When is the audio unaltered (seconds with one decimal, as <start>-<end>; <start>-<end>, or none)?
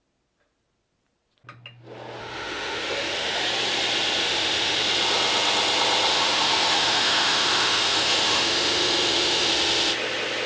0.0-2.2; 3.4-4.2; 4.8-6.1; 9.5-10.5